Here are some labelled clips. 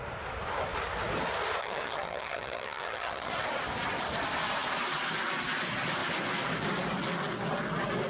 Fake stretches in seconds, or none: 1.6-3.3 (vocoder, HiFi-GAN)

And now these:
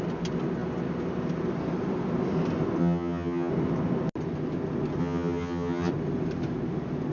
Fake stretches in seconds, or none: 2.8-3.5 (vocoder, HiFi-GAN); 5.0-5.9

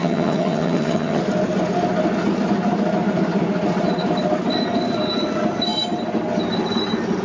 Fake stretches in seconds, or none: 0.0-1.2 (vocoder, HiFi-GAN)

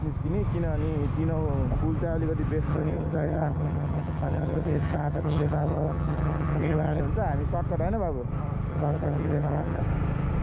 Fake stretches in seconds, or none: 2.7-7.0 (vocoder, HiFi-GAN); 8.7-9.8

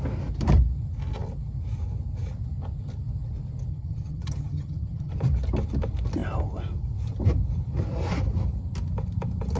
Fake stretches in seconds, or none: 3.7-5.1 (vocoder, HiFi-GAN)

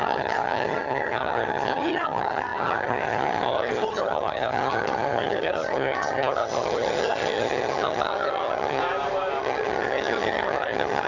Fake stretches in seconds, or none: 0.0-8.8 (vocoder, HiFi-GAN); 9.4-11.1

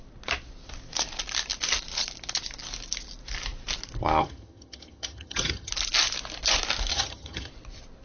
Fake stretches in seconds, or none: 4.2-5.7 (vocoder, HiFi-GAN); 6.9-7.5